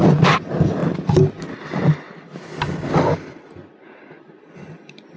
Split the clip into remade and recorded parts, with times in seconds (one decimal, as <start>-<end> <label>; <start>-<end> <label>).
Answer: 0.0-5.2 recorded